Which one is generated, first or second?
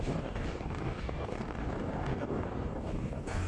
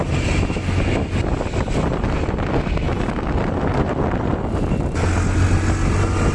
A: first